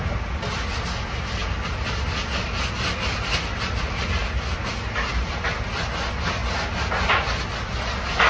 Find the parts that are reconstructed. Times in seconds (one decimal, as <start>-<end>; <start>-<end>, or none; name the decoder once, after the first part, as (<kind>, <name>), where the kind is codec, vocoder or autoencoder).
none